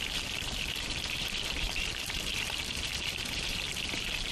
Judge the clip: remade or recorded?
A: remade